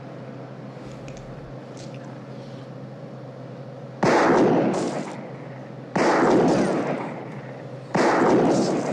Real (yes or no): yes